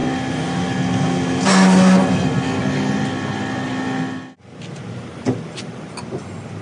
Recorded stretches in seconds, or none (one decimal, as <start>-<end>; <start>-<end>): 0.0-6.6